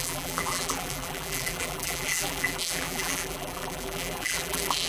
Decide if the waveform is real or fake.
fake